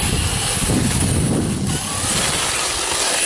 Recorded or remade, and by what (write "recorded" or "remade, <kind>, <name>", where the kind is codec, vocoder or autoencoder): recorded